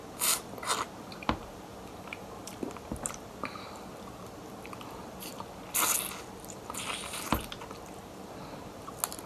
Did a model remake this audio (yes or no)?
no